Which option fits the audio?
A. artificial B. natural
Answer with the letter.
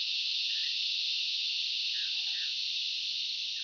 B